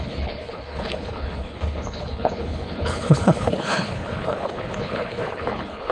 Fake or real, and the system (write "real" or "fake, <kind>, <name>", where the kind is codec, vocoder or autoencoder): fake, codec, HILCodec